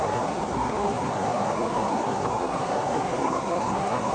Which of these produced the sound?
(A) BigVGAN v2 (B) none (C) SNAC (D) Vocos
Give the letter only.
C